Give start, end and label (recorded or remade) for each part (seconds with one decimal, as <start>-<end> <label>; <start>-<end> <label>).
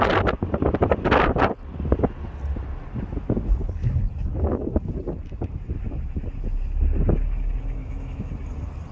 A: 0.0-7.8 recorded; 7.8-8.3 remade; 8.3-8.9 recorded